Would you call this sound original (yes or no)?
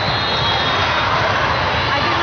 yes